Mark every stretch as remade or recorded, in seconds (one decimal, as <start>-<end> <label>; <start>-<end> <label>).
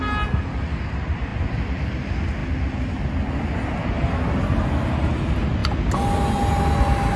0.0-7.2 recorded